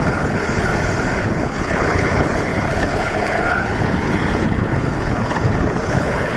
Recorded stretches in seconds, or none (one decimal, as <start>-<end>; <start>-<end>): 0.7-1.2